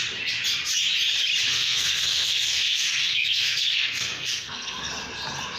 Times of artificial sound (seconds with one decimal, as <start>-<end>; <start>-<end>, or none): 1.5-4.9